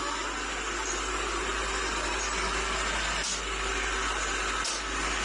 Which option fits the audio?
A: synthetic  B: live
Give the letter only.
B